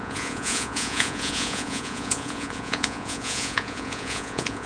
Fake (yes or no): yes